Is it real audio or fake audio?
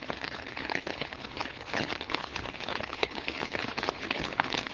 fake